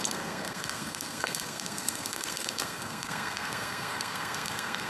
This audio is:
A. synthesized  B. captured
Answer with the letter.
A